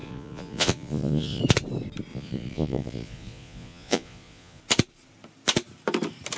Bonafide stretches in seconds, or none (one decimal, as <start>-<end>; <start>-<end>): 1.4-2.1; 4.6-6.4